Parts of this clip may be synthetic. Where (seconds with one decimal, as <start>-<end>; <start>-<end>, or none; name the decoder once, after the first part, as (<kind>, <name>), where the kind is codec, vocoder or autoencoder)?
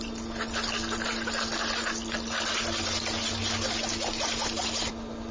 none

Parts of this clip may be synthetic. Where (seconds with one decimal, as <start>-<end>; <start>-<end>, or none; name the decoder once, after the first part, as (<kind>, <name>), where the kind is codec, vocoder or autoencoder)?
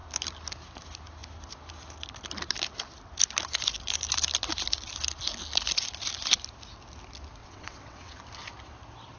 7.4-8.2 (vocoder, WaveNeXt)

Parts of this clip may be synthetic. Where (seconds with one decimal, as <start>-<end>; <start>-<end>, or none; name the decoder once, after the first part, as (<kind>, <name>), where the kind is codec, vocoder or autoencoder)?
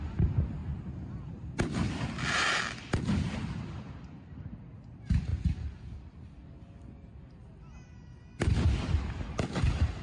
none